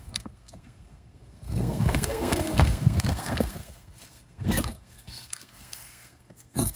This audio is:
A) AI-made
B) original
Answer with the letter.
A